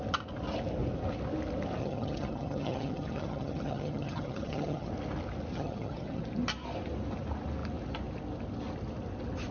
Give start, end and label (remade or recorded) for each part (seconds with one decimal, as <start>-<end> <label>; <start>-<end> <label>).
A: 0.0-1.8 recorded; 1.8-4.9 remade; 4.9-5.5 recorded; 5.5-6.2 remade; 6.2-9.5 recorded